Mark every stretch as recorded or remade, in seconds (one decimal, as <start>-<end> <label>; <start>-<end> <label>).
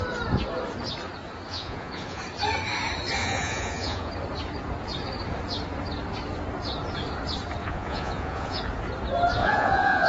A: 0.0-1.5 recorded; 1.5-2.2 remade; 2.2-3.2 recorded; 3.2-4.1 remade; 4.1-7.6 recorded; 7.6-8.6 remade; 8.6-9.4 recorded; 9.4-10.1 remade